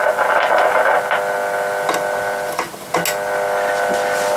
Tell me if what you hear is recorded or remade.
recorded